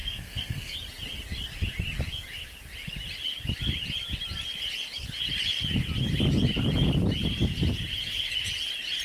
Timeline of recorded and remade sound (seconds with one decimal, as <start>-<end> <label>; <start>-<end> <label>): 0.0-0.7 remade; 0.7-9.0 recorded

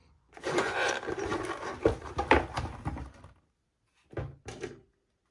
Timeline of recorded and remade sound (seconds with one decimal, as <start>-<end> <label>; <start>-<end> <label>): 0.0-0.9 remade; 0.9-5.3 recorded

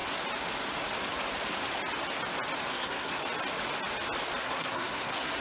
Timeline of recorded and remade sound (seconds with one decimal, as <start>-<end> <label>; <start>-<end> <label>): 0.0-2.7 recorded; 2.7-3.2 remade; 3.2-4.4 recorded; 4.4-5.4 remade

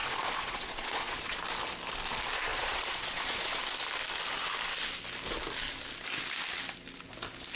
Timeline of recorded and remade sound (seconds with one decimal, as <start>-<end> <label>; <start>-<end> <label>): 0.0-1.4 remade; 1.4-2.5 recorded; 2.5-3.6 remade; 3.6-7.6 recorded